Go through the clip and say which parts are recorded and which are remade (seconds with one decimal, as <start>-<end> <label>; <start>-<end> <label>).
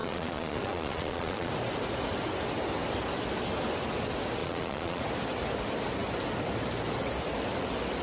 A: 0.0-1.5 remade; 1.5-4.4 recorded; 4.4-5.0 remade; 5.0-8.0 recorded